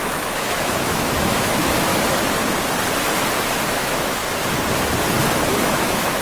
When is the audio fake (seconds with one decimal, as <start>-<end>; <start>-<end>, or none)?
0.0-1.9; 3.7-4.2; 5.5-6.2